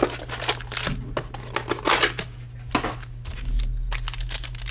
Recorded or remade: recorded